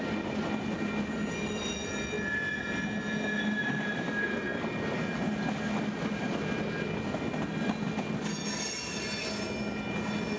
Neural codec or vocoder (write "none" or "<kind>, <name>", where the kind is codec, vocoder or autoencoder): none